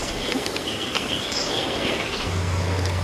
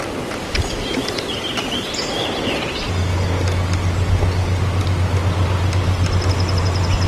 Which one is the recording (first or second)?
second